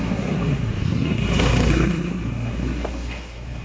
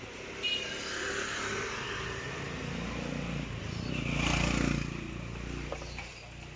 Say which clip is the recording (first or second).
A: second